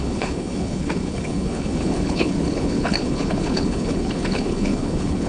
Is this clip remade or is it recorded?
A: remade